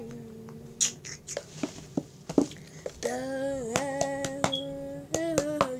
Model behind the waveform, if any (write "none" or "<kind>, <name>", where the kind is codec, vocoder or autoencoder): none